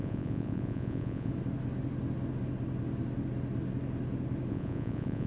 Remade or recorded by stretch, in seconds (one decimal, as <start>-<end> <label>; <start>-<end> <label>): 0.0-1.3 remade; 1.3-4.5 recorded; 4.5-5.3 remade